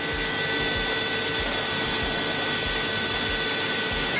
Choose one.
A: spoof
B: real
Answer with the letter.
B